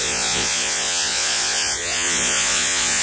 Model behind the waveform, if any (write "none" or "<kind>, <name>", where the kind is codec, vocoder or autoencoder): vocoder, Vocos